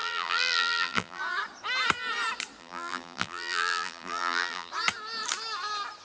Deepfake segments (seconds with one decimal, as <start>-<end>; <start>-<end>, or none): 0.0-1.2; 2.6-4.7